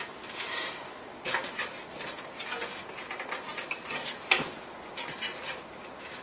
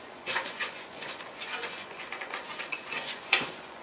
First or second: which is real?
first